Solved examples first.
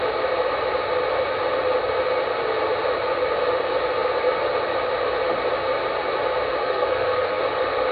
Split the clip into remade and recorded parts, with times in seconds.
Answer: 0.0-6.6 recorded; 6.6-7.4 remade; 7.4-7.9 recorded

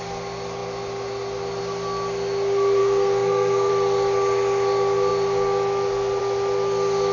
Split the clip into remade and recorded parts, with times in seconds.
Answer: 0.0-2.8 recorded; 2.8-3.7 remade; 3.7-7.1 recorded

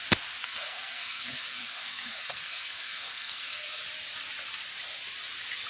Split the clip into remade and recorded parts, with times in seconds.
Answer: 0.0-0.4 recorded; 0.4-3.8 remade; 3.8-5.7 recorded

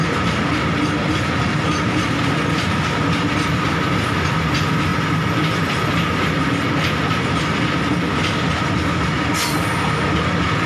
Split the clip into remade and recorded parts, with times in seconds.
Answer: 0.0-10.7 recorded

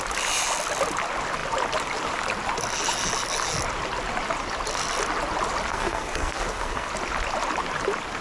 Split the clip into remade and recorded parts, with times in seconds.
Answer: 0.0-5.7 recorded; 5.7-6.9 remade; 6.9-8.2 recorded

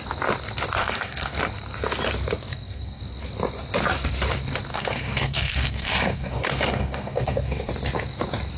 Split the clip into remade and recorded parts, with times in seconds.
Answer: 0.0-0.8 recorded; 0.8-1.4 remade; 1.4-2.5 recorded; 2.5-3.0 remade; 3.0-4.7 recorded; 4.7-7.7 remade; 7.7-8.6 recorded